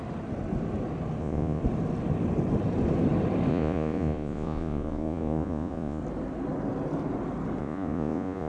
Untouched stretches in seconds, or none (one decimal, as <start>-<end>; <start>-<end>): 0.0-1.2; 1.6-3.5; 6.0-7.6